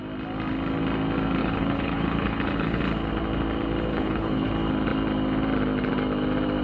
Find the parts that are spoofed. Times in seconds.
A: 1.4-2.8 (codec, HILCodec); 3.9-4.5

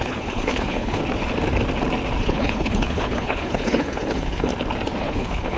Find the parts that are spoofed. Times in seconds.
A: 0.0-1.0 (codec, HILCodec); 2.2-4.5; 5.0-5.6

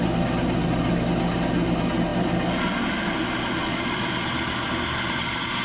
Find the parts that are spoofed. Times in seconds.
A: none